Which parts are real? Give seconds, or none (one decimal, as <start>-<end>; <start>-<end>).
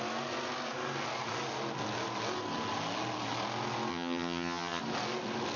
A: 0.0-3.9; 4.8-5.6